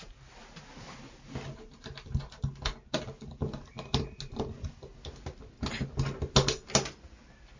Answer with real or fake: real